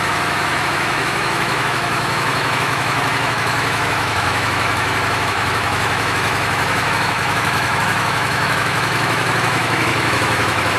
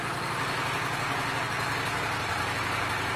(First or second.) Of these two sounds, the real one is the second